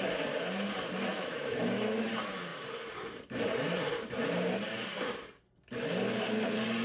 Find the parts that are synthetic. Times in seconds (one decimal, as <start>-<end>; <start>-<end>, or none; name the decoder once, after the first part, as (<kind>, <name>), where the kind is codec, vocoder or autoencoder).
1.1-2.1 (autoencoder, DAC-VAE)